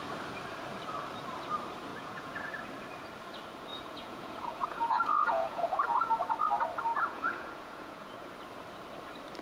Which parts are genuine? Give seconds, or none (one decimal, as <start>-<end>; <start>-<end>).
0.0-1.9; 2.5-3.7; 6.1-6.9; 8.3-9.4